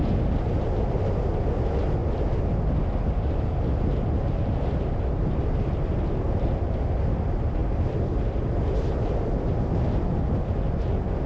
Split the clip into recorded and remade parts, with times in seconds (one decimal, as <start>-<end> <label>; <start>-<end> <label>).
0.0-11.3 recorded